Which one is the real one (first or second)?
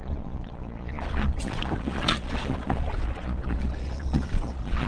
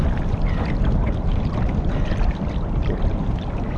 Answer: second